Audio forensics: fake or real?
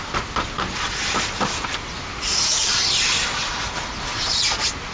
real